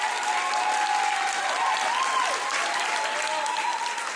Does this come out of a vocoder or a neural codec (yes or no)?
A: no